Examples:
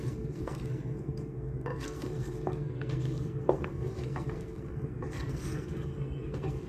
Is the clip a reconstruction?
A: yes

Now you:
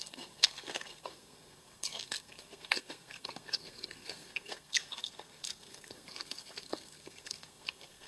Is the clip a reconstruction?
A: yes